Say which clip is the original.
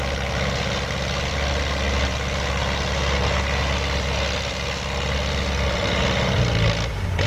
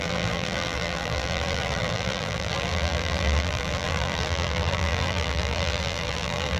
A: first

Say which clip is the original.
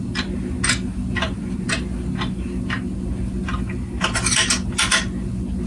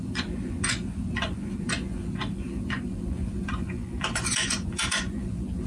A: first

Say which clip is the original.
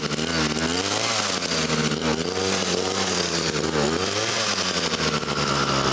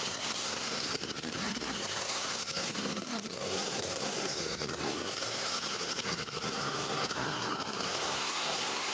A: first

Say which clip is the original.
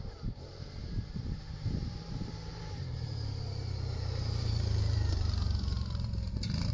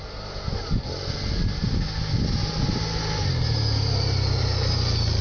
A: second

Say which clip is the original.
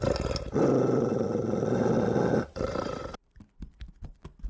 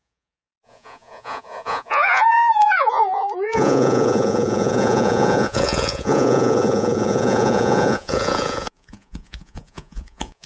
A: first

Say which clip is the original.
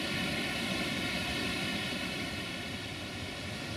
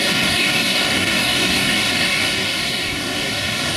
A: first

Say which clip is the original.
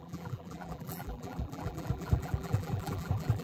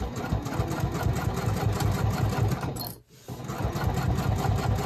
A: second